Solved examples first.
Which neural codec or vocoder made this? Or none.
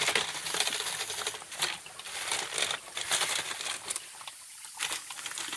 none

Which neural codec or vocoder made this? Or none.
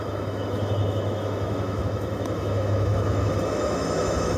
autoencoder, DAC-VAE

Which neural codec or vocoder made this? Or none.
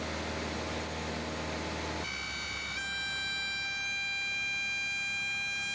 none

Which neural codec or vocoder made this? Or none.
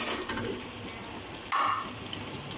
none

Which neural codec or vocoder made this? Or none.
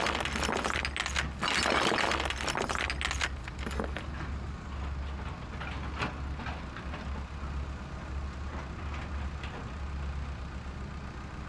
none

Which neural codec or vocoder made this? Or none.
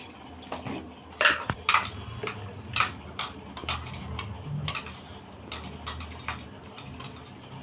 none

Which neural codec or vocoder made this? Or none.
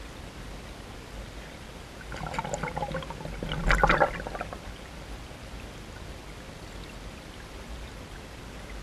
none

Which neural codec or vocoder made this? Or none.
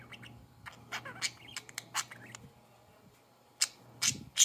none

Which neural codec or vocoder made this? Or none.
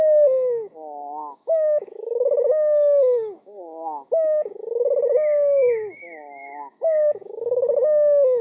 autoencoder, DAC-VAE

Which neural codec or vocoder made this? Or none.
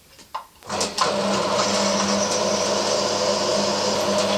none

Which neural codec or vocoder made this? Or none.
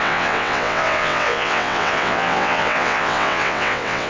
vocoder, WaveNeXt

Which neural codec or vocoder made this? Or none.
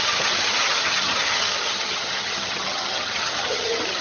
vocoder, HiFi-GAN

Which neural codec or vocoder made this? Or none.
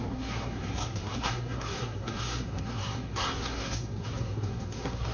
codec, SNAC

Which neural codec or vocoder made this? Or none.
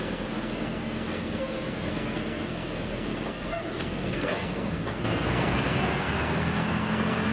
codec, SNAC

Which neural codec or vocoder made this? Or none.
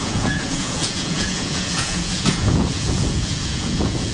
vocoder, Vocos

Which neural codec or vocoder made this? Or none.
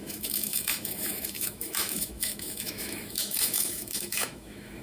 autoencoder, DAC-VAE